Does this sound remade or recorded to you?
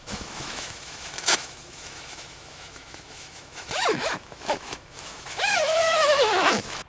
remade